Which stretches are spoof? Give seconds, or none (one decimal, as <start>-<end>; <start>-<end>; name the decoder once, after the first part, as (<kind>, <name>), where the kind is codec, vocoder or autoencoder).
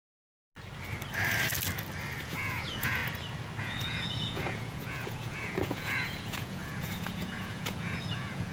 0.0-0.5 (vocoder, Vocos); 2.2-3.0; 3.6-8.5